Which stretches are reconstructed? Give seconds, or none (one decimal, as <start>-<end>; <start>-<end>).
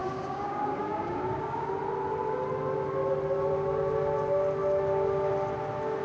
0.0-1.7